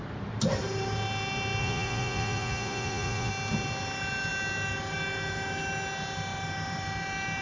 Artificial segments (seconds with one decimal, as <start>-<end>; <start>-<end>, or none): 1.6-3.3